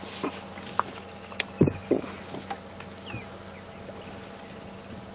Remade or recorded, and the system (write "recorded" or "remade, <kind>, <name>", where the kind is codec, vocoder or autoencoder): recorded